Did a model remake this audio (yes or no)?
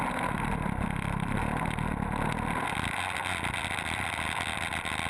no